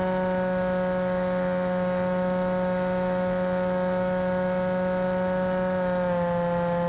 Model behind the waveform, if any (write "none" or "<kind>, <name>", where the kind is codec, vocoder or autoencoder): none